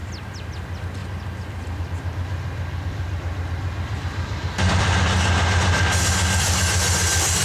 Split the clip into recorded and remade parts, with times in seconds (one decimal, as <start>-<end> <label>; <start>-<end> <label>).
0.0-1.0 recorded; 1.0-4.7 remade; 4.7-7.4 recorded